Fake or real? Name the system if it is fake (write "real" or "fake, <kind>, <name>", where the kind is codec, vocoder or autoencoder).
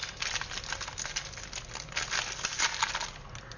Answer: real